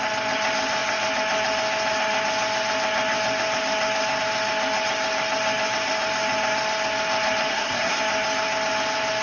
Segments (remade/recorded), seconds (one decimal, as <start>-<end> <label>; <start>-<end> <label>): 0.0-7.5 recorded; 7.5-8.0 remade; 8.0-9.2 recorded